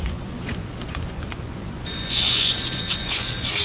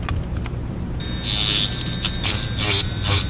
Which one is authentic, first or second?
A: second